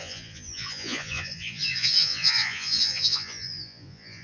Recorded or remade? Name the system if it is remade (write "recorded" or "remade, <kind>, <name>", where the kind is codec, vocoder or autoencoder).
remade, vocoder, Vocos